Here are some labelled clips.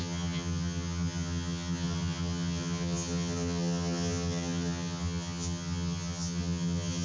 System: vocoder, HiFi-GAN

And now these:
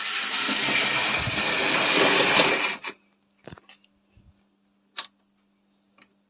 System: none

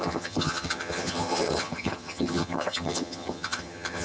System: vocoder, HiFi-GAN